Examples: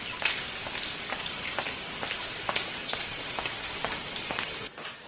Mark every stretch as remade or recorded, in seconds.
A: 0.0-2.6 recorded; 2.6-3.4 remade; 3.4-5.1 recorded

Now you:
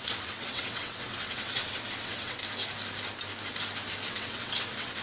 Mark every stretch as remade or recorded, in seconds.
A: 0.0-2.4 remade; 2.4-4.1 recorded; 4.1-5.0 remade

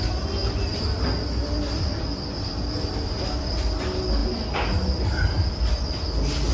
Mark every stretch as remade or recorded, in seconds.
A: 0.0-6.5 recorded